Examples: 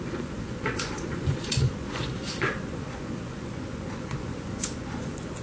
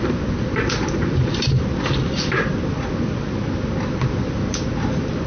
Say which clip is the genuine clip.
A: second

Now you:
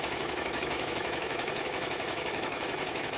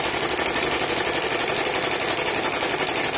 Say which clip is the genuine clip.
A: second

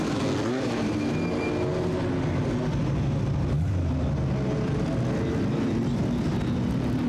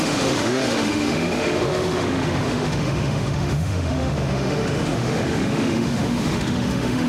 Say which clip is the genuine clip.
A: first